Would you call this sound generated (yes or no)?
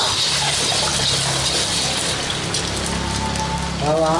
no